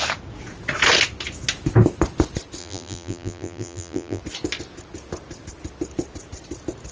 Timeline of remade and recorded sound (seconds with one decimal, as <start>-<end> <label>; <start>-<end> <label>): 0.0-2.6 recorded; 2.6-4.2 remade; 4.2-6.9 recorded